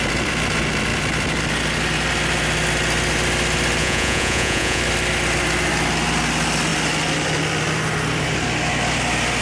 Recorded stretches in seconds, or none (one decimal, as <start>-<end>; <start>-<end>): 0.0-3.8; 4.8-9.4